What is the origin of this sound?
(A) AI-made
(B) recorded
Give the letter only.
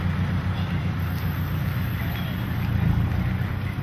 B